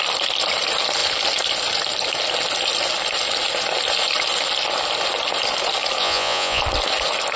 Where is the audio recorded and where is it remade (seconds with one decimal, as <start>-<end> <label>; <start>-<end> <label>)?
0.0-6.0 recorded; 6.0-6.6 remade; 6.6-7.4 recorded